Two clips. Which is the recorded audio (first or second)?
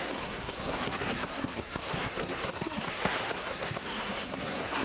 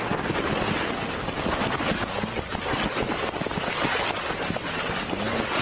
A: second